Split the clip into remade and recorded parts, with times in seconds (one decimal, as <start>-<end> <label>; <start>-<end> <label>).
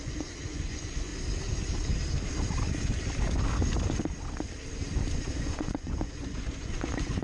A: 0.0-1.1 remade; 1.1-5.4 recorded; 5.4-7.2 remade